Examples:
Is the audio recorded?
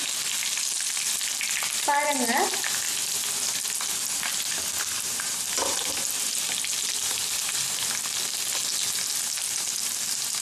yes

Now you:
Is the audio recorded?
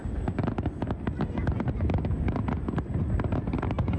yes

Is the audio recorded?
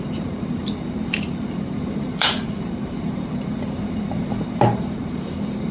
no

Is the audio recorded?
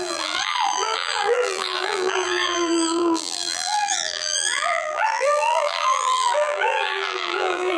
no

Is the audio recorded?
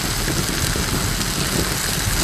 yes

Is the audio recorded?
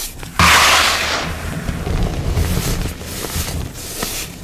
yes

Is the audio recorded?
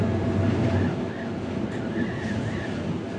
yes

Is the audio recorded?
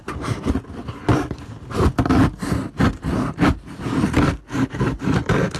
yes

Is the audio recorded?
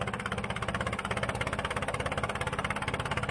yes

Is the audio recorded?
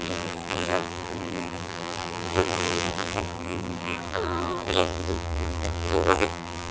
no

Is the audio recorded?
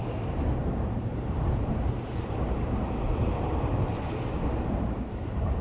no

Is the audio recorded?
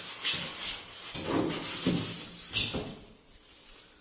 yes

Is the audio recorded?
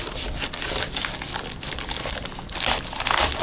no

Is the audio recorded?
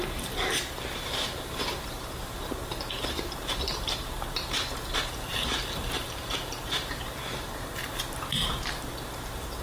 no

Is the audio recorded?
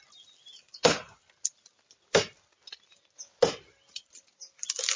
yes